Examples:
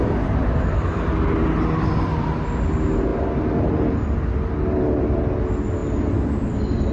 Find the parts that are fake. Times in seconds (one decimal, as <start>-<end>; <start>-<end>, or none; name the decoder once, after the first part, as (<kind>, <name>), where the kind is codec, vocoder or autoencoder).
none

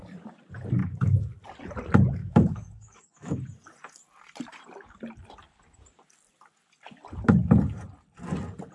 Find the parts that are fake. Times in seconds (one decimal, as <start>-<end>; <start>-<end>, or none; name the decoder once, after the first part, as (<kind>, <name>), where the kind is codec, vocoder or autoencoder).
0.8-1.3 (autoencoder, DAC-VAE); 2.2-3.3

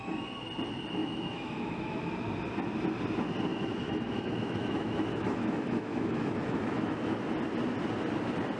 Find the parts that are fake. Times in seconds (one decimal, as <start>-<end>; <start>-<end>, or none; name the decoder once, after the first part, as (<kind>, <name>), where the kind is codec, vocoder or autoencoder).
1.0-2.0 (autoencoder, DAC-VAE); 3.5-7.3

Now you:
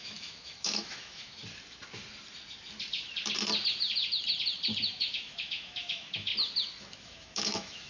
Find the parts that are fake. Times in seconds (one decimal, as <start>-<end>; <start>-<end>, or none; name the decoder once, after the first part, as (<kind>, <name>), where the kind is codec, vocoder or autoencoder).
0.0-1.4 (autoencoder, DAC-VAE); 4.9-6.3; 6.8-7.9

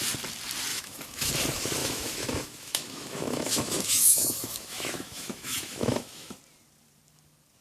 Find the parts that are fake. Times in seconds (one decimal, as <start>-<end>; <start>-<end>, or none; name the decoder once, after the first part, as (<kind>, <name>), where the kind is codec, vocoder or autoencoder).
0.7-1.3 (autoencoder, DAC-VAE); 1.8-6.4

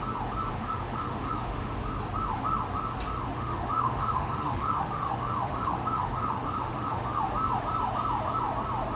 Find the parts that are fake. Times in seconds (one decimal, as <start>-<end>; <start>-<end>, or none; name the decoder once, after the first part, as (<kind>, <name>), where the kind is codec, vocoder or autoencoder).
0.5-1.7 (autoencoder, DAC-VAE); 3.3-7.2

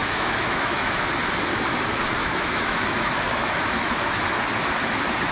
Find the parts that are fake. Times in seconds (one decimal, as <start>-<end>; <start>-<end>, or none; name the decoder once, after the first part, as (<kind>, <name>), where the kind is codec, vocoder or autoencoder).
0.0-1.1 (autoencoder, DAC-VAE); 2.2-4.3

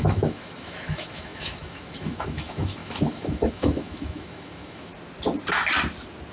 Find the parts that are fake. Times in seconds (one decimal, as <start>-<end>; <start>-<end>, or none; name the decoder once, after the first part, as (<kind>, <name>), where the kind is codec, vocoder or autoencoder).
0.0-4.9 (autoencoder, DAC-VAE)